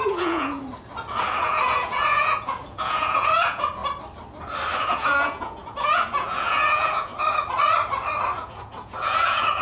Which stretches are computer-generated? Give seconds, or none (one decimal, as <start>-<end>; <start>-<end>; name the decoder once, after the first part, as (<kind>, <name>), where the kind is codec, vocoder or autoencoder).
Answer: 0.0-0.6 (vocoder, Vocos); 1.4-3.8; 4.8-7.1; 8.4-9.6